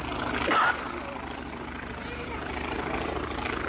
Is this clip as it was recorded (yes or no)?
yes